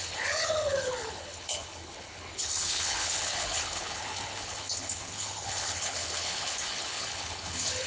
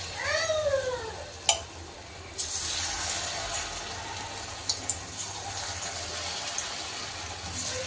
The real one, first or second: second